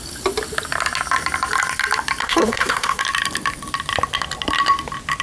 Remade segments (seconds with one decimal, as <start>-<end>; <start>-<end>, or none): 2.2-3.0

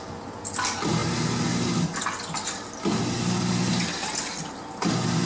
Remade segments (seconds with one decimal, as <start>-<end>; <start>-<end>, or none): none

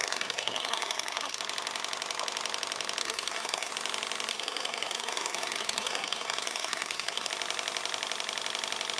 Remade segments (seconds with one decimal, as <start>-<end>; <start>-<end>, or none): 0.0-1.4; 3.0-3.7; 4.3-7.3

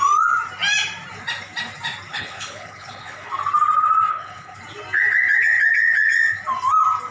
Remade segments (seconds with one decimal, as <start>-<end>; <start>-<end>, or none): 2.1-3.3; 4.1-4.6

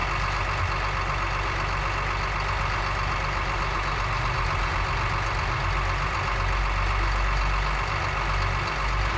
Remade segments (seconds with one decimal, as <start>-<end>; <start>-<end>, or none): none

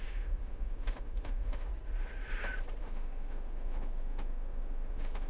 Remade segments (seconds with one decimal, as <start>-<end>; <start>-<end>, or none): 0.0-1.7; 2.8-5.3

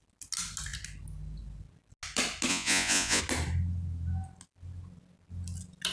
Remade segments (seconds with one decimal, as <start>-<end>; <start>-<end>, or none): 2.5-3.2